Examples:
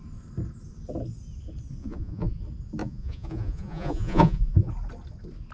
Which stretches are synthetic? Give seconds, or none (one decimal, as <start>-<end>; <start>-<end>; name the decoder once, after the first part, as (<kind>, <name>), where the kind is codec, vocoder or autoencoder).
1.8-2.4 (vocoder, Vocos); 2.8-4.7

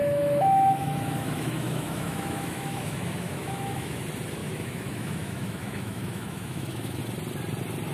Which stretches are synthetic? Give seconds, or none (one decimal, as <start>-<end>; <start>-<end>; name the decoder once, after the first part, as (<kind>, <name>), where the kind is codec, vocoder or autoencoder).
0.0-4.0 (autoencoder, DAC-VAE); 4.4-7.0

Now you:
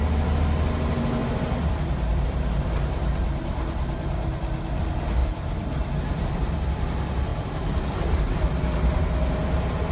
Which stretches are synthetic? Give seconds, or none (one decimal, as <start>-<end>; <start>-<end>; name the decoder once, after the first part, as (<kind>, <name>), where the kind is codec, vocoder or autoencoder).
1.2-2.6 (vocoder, BigVGAN v2); 5.2-6.0; 7.3-8.2

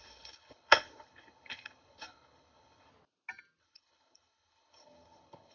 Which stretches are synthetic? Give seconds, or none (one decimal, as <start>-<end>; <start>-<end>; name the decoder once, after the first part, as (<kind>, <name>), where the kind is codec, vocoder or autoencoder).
0.0-2.9 (codec, HILCodec); 3.6-5.5